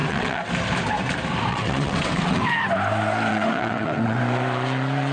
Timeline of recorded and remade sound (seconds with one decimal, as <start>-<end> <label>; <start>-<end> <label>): 0.0-0.5 remade; 0.5-1.5 recorded; 1.5-2.4 remade; 2.4-3.3 recorded; 3.3-4.2 remade; 4.2-5.1 recorded